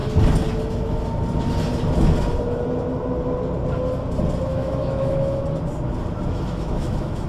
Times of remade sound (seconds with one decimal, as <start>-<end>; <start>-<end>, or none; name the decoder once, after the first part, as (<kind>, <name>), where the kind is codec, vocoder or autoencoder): 4.4-5.4 (autoencoder, DAC-VAE); 6.3-7.3